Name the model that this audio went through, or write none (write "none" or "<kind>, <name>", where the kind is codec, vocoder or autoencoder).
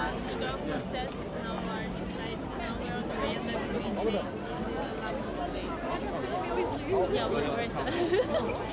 none